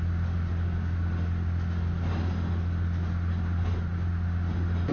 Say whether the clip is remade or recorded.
recorded